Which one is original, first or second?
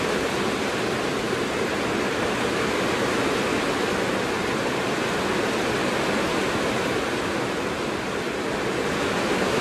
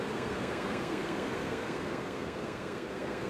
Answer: first